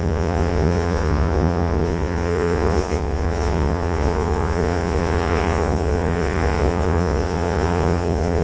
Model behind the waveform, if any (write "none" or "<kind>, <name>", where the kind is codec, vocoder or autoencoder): vocoder, Vocos